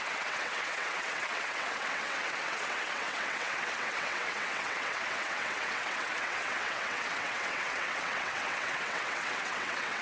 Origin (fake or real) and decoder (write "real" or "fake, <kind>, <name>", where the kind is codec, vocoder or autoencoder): fake, vocoder, WaveNeXt